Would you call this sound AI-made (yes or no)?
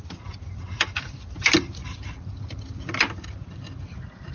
no